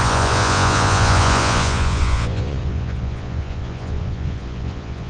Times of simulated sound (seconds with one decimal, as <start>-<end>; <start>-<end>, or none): 0.0-5.1